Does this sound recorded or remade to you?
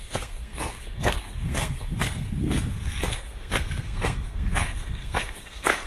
remade